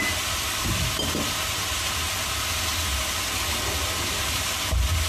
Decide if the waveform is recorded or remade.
recorded